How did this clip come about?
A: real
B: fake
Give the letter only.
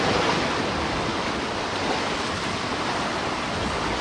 A